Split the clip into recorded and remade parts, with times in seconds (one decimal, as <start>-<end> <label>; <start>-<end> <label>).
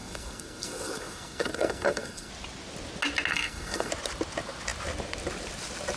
0.0-2.3 remade; 2.3-3.3 recorded; 3.3-3.9 remade; 3.9-6.0 recorded